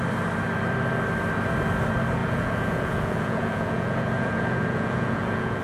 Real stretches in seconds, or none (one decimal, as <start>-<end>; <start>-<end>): 0.0-2.2